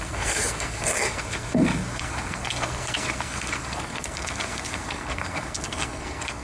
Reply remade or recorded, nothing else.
remade